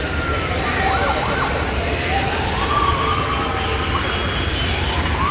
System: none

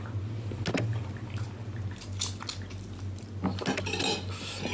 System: none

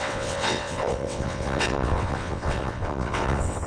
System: vocoder, WaveNeXt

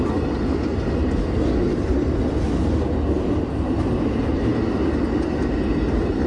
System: none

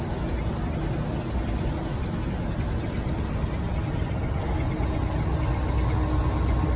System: none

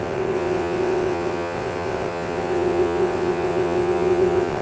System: vocoder, WaveNeXt